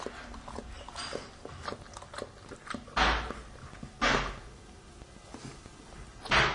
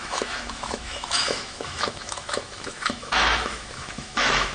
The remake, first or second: second